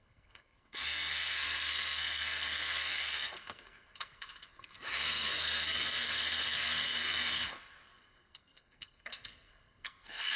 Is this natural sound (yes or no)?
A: no